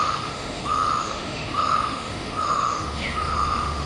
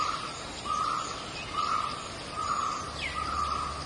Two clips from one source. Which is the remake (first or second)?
first